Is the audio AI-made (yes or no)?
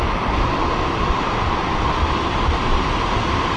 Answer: no